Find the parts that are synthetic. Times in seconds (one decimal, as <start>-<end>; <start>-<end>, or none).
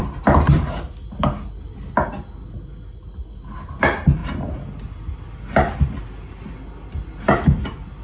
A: none